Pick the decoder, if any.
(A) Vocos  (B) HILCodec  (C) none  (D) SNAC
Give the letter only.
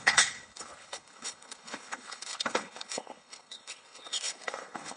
B